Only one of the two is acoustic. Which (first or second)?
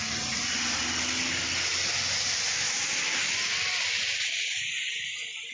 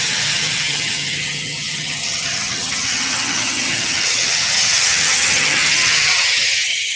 first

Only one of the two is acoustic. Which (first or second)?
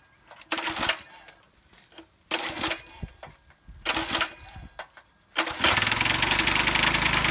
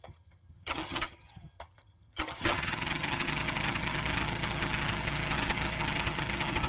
first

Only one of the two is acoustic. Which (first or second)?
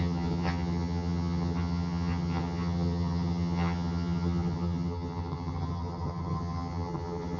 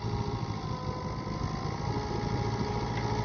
second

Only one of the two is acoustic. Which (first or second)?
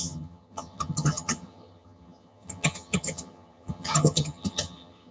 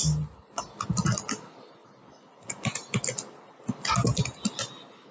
second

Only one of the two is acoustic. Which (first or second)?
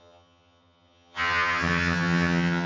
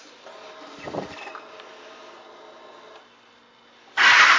second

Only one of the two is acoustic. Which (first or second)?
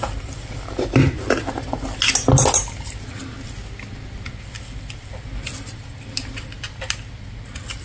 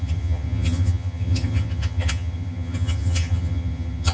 first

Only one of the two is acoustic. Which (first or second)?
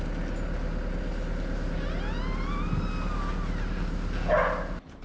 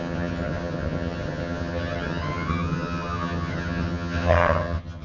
first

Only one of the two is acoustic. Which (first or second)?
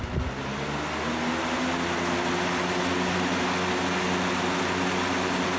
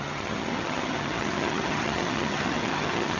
first